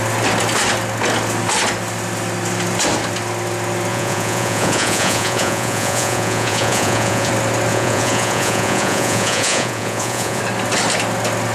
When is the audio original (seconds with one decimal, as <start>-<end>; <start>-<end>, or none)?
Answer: 0.0-3.9; 7.3-7.7; 10.4-11.5